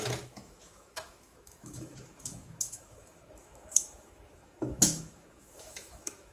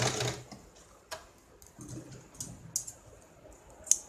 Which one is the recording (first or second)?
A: second